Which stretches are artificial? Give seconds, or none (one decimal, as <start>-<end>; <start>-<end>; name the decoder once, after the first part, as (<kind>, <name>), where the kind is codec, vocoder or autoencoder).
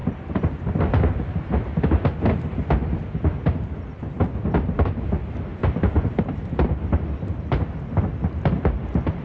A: 0.0-0.7 (vocoder, BigVGAN v2); 5.5-7.5